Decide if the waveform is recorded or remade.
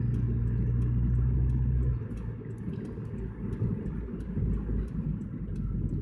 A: recorded